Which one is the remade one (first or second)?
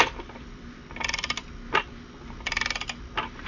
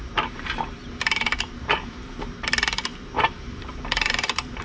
second